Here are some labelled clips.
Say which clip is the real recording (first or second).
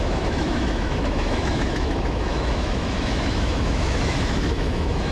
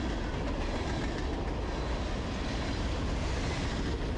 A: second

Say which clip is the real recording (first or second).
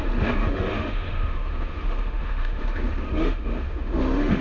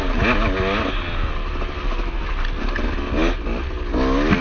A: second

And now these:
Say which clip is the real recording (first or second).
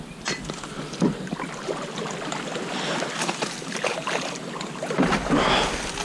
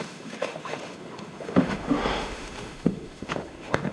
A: first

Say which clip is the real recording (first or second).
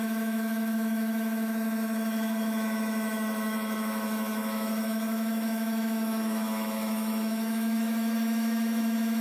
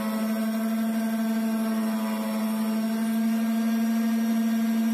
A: second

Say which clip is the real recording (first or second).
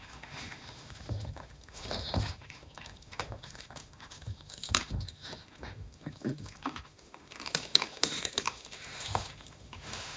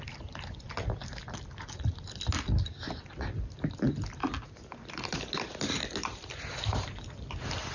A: second